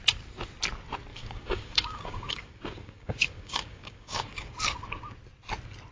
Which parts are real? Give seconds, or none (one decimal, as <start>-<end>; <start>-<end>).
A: 0.0-1.1; 4.6-5.9